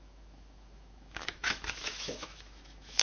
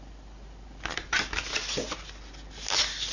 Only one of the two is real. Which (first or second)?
second